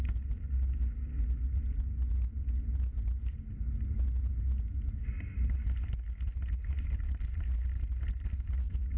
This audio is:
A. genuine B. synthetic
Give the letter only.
A